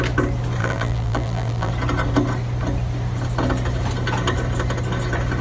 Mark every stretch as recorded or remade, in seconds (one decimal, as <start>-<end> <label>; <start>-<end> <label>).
0.0-0.6 recorded; 0.6-1.7 remade; 1.7-5.4 recorded